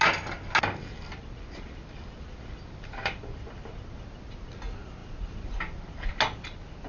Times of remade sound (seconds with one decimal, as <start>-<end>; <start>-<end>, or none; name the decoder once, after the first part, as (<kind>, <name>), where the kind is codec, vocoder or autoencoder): none